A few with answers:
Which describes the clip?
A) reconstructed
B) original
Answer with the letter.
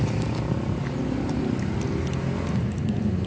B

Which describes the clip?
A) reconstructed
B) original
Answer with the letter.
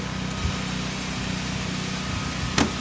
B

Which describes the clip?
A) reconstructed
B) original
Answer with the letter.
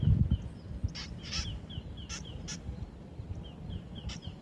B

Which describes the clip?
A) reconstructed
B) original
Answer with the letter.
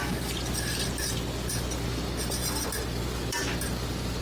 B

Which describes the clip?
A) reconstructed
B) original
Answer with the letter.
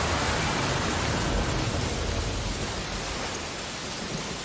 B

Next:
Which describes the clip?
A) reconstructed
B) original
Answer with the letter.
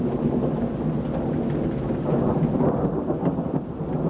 B